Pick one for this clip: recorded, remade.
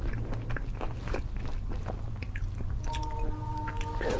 recorded